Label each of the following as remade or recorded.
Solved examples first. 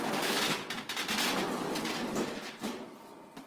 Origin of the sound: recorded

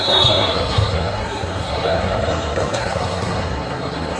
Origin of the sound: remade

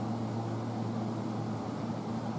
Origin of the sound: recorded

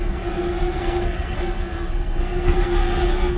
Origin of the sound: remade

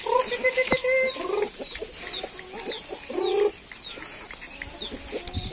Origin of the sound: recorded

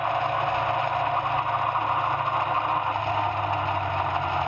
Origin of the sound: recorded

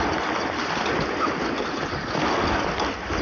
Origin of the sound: recorded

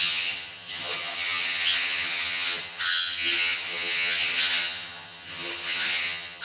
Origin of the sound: remade